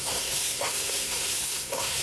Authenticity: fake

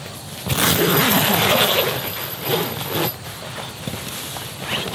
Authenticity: real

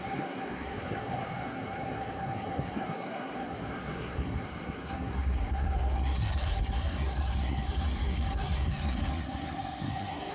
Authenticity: fake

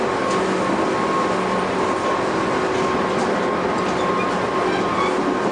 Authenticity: real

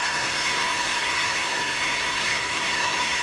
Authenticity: fake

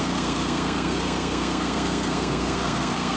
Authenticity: fake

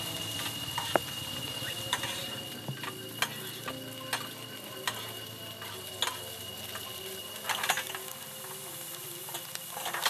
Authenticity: real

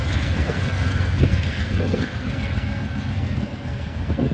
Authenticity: fake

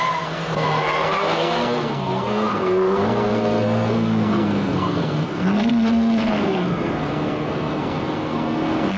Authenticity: fake